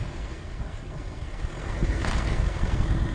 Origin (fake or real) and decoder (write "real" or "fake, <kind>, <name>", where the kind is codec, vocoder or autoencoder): fake, codec, SNAC